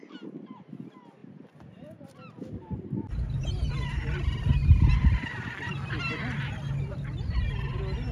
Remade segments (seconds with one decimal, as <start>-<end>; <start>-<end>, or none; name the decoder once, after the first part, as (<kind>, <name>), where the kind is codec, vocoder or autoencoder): 1.2-5.5 (vocoder, BigVGAN v2)